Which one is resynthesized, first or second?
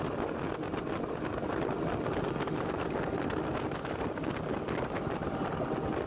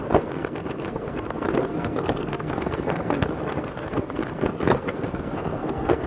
second